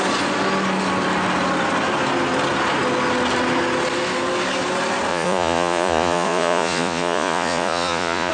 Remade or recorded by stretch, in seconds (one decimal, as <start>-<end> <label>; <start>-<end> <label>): 0.0-5.1 recorded; 5.1-8.3 remade